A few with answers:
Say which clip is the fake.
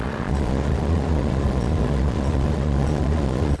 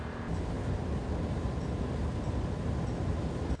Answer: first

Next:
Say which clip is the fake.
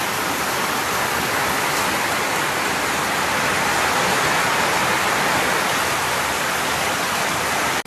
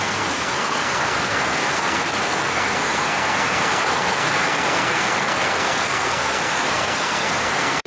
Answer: second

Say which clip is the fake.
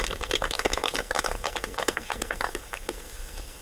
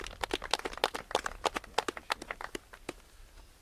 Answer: first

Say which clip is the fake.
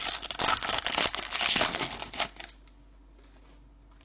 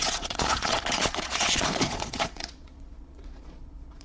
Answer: second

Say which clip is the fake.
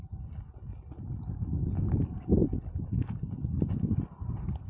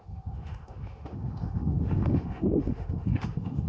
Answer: second